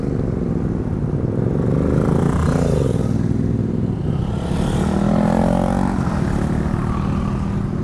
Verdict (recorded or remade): recorded